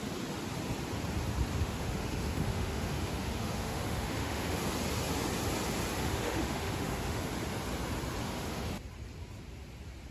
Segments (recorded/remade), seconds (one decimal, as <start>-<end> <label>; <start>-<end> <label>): 0.0-1.5 recorded; 1.5-4.6 remade; 4.6-6.0 recorded; 6.0-7.2 remade; 7.2-8.2 recorded; 8.2-8.7 remade; 8.7-10.1 recorded